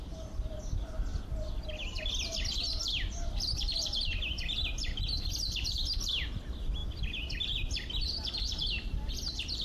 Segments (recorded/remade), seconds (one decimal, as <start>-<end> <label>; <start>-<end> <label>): 0.0-1.1 recorded; 1.1-2.1 remade; 2.1-9.6 recorded